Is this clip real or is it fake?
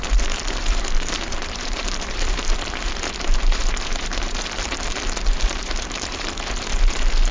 fake